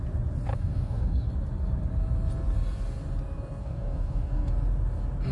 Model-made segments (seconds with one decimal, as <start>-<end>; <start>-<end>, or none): 0.5-1.3; 3.6-4.5